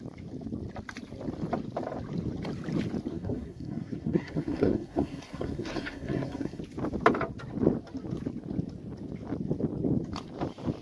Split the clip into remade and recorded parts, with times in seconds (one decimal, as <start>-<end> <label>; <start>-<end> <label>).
0.0-3.1 recorded; 3.1-6.6 remade; 6.6-10.8 recorded

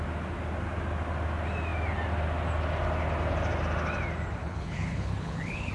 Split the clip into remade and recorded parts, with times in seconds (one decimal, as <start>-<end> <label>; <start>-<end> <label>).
0.0-4.4 recorded; 4.4-5.7 remade